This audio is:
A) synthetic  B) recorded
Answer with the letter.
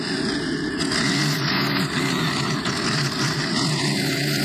B